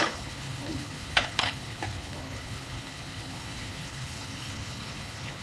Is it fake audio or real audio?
fake